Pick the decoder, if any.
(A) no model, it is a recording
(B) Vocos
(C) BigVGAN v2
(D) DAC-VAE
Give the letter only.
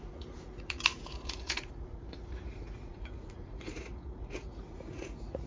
B